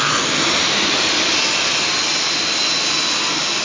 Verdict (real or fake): real